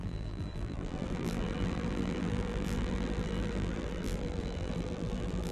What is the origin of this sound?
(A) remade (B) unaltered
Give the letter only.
A